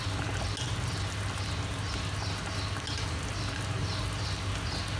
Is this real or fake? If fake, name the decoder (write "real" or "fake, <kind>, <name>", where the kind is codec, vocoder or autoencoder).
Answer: real